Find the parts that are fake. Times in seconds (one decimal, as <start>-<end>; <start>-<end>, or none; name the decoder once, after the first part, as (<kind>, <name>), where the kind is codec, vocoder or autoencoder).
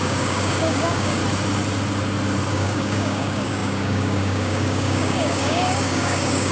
0.0-1.2 (codec, DAC); 2.5-6.5